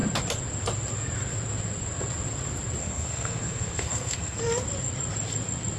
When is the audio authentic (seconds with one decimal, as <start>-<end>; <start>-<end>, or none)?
0.0-2.8; 4.4-5.8